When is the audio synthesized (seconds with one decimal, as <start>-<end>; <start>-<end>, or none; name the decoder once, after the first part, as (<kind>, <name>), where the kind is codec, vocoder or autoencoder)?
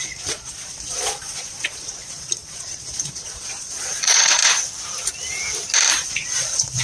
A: 0.0-4.4 (vocoder, Vocos); 5.9-6.8